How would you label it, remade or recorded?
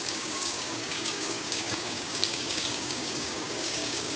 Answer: remade